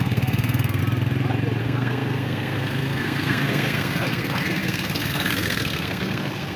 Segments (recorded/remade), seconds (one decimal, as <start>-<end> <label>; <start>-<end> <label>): 0.0-0.8 remade; 0.8-1.6 recorded; 1.6-6.6 remade